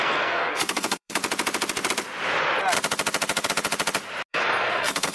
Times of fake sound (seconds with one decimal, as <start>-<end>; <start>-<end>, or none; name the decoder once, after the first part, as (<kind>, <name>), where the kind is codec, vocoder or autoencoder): 0.0-1.2 (codec, SNAC); 4.3-5.1